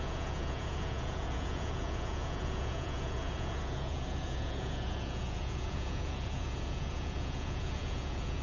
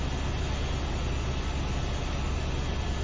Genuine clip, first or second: second